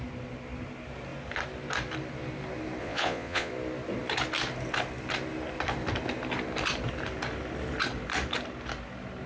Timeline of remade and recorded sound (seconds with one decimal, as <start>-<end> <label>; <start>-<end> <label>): 0.0-2.8 recorded; 2.8-3.5 remade; 3.5-9.3 recorded